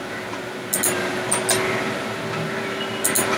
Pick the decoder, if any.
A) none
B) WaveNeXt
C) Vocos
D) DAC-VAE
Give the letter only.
A